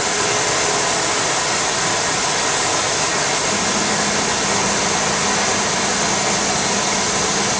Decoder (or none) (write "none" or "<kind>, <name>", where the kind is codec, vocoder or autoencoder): none